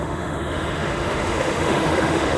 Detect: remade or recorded remade